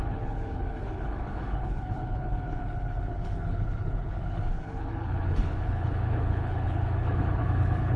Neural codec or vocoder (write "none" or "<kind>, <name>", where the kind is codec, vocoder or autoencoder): codec, HILCodec